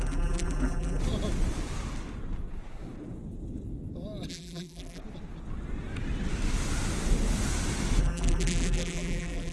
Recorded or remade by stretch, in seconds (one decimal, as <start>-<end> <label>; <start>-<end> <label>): 0.0-1.0 remade; 1.0-4.3 recorded; 4.3-5.0 remade; 5.0-8.0 recorded; 8.0-9.5 remade